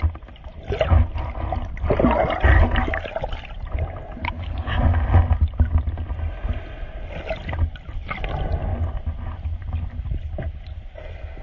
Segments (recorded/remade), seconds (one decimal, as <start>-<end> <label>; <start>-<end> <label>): 0.0-4.2 recorded; 4.2-4.7 remade; 4.7-11.4 recorded